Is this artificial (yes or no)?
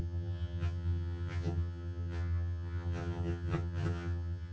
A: yes